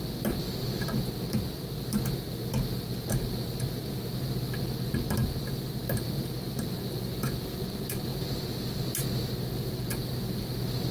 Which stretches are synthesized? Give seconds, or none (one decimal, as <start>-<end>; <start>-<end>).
none